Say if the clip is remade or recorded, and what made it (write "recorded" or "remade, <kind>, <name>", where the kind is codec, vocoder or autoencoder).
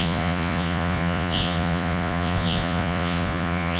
remade, vocoder, Vocos